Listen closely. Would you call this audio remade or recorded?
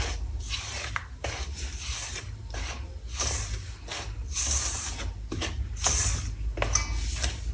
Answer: recorded